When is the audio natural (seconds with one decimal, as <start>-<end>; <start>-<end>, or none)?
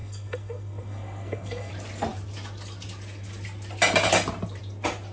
1.7-5.1